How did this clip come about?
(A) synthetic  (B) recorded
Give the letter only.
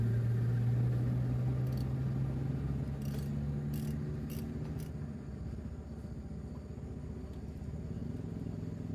B